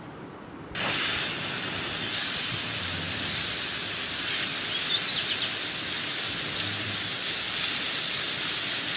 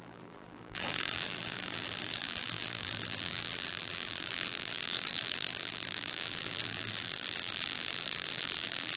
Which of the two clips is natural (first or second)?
first